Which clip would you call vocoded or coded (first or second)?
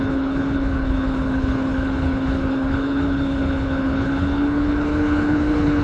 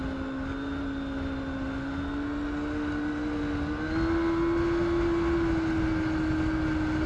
first